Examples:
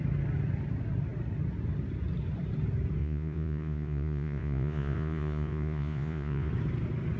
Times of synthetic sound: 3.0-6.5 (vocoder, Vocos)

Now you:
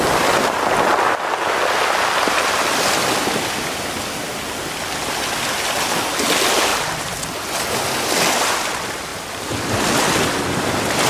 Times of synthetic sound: none

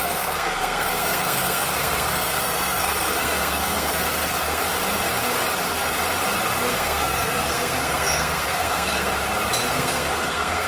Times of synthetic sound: 0.0-4.6 (codec, SNAC); 6.7-9.1; 9.7-10.7